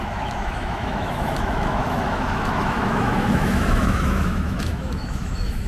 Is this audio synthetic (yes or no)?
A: yes